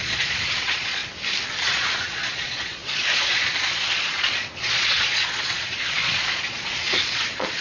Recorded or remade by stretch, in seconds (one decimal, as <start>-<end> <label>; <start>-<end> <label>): 0.0-1.0 remade; 1.0-1.6 recorded; 1.6-7.6 remade